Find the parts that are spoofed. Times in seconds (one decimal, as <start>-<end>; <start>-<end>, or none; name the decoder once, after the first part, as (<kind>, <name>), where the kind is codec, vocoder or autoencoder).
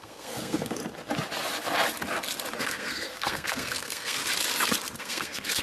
0.0-0.8 (codec, SNAC); 2.6-4.2; 5.0-5.6